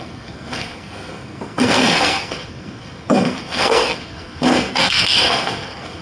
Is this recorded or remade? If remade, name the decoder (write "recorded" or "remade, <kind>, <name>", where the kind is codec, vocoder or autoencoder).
remade, codec, SNAC